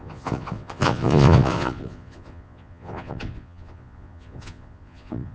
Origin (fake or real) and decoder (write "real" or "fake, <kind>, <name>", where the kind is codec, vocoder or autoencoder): fake, vocoder, Vocos